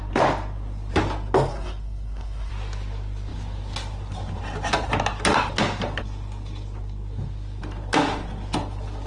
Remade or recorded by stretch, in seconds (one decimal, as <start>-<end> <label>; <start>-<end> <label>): 0.0-1.5 recorded; 1.5-2.5 remade; 2.5-9.1 recorded